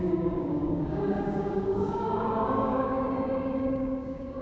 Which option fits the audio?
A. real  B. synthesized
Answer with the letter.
B